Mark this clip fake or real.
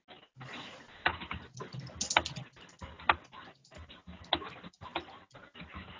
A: real